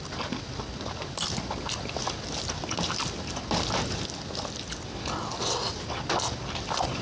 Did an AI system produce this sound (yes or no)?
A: no